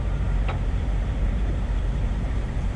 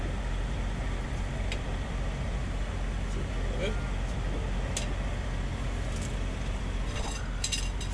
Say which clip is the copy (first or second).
first